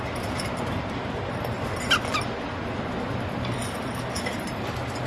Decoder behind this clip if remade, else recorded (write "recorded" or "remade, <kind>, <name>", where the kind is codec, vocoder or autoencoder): recorded